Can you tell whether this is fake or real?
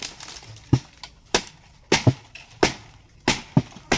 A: real